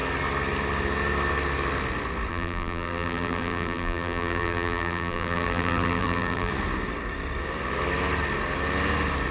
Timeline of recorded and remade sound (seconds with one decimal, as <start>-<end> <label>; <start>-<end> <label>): 0.0-2.3 recorded; 2.3-6.5 remade; 6.5-9.3 recorded